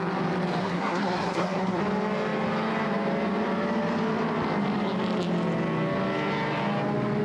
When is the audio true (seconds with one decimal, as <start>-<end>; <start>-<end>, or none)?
0.0-0.6; 1.8-7.2